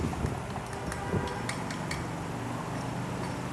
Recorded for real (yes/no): yes